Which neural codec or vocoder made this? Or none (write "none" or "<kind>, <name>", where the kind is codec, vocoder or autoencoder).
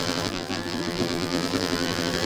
vocoder, BigVGAN v2